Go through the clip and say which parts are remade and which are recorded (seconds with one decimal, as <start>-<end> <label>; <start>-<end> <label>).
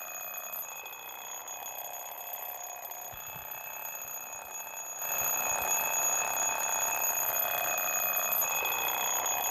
0.0-9.5 recorded